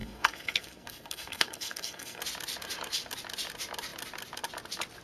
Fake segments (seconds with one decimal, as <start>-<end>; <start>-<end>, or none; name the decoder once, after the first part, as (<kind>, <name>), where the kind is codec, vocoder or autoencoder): 0.0-2.2 (codec, SNAC)